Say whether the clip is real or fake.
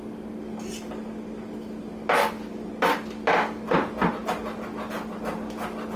real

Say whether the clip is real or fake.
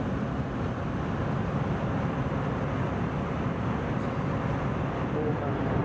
real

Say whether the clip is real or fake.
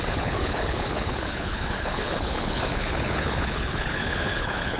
fake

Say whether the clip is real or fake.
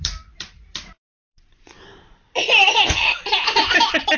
fake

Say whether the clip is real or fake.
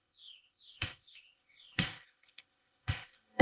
fake